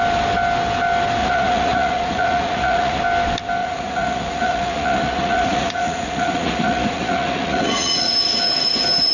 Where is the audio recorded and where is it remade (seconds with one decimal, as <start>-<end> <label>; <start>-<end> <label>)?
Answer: 0.0-1.2 recorded; 1.2-3.0 remade; 3.0-3.6 recorded; 3.6-8.1 remade; 8.1-9.1 recorded